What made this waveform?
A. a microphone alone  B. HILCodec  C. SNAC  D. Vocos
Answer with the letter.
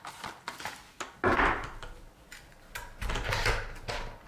A